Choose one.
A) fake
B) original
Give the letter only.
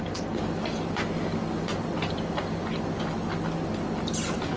B